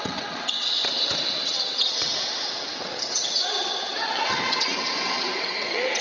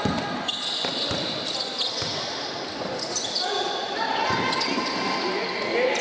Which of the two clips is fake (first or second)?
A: first